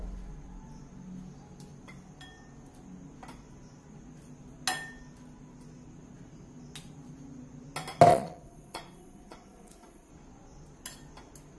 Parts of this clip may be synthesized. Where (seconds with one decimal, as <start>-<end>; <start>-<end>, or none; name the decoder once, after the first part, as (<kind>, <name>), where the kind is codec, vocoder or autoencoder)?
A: 8.1-10.1 (vocoder, Vocos)